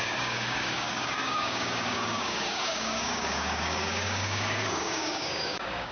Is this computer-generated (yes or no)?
yes